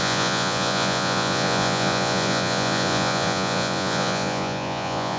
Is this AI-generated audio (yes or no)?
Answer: yes